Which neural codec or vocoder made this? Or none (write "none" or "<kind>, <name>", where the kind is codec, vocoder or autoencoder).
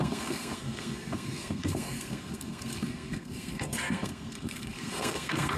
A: codec, SNAC